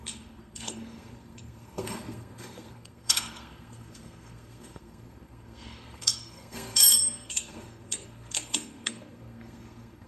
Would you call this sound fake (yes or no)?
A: yes